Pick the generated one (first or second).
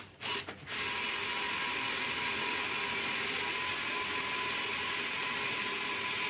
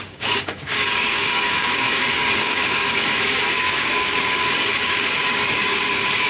second